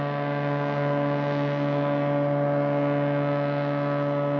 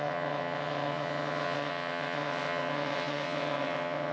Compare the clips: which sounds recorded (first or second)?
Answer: first